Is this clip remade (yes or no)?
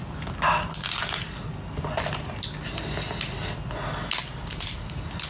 no